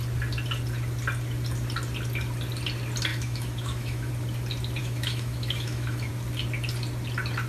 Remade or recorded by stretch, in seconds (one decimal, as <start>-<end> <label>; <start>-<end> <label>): 0.0-3.1 recorded; 3.1-4.1 remade; 4.1-4.8 recorded; 4.8-6.1 remade; 6.1-7.5 recorded